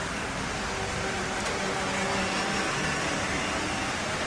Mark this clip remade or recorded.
recorded